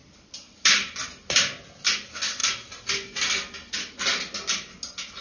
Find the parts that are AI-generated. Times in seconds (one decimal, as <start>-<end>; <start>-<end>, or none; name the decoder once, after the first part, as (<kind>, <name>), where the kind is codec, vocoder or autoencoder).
0.0-1.7 (vocoder, BigVGAN v2)